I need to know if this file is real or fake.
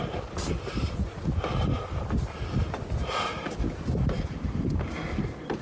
real